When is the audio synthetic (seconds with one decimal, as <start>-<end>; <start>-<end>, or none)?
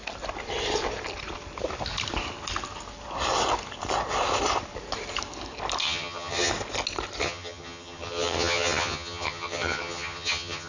5.8-6.5; 7.2-10.7